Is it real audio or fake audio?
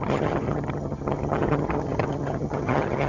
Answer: fake